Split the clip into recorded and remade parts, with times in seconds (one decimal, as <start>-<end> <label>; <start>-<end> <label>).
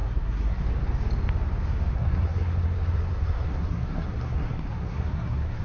0.0-0.6 remade; 0.6-1.9 recorded; 1.9-5.6 remade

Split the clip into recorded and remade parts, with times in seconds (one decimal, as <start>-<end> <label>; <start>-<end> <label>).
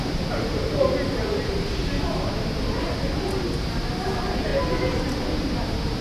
0.0-6.0 recorded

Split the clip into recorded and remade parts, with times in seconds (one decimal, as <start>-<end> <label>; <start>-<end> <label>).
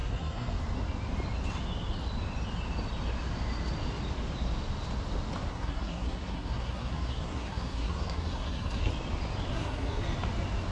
0.0-0.6 remade; 0.6-5.5 recorded; 5.5-8.9 remade; 8.9-9.5 recorded; 9.5-10.0 remade; 10.0-10.7 recorded